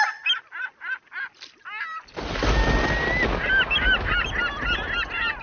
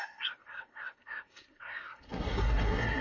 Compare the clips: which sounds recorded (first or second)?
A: first